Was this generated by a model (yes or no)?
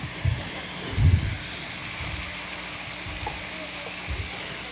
no